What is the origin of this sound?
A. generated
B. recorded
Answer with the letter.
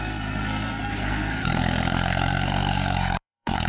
A